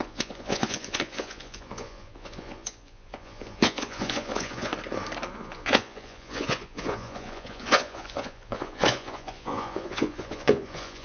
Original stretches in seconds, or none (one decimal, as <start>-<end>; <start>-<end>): 4.7-5.3